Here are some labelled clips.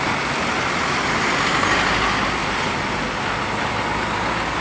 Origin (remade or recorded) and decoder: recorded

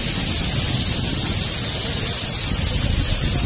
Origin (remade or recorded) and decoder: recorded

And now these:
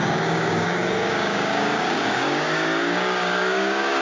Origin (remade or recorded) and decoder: remade, codec, DAC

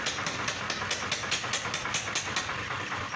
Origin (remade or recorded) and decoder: recorded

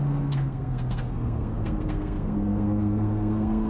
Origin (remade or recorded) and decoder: remade, codec, SNAC